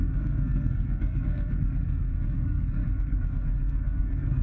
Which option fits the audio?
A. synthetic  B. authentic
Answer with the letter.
A